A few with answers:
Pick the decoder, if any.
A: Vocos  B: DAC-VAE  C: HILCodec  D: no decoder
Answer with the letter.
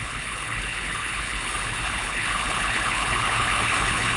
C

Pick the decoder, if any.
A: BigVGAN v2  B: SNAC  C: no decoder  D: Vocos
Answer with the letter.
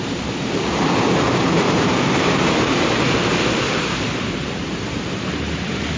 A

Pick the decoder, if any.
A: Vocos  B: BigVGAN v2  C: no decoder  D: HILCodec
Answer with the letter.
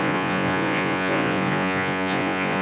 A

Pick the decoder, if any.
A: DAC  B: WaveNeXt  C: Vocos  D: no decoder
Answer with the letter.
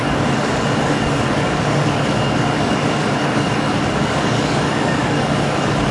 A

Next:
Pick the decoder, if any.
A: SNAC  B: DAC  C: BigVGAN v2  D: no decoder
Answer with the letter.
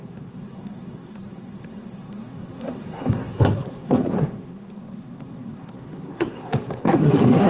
A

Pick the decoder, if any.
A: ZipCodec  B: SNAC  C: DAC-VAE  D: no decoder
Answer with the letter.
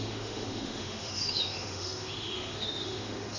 C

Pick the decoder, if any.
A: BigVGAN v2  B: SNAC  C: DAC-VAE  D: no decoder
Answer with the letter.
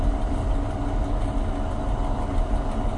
D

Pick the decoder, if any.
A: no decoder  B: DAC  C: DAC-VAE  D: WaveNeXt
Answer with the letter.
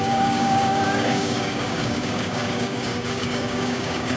B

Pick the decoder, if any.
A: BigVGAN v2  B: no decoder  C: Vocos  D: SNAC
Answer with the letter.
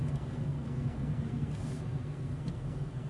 D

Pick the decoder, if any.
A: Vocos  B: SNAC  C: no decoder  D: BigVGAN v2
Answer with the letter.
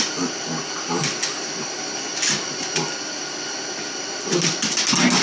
C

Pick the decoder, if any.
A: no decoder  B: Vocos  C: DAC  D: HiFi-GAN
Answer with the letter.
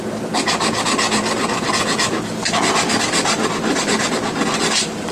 A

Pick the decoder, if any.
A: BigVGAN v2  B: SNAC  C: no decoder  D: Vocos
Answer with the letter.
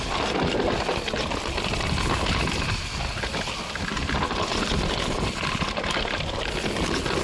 C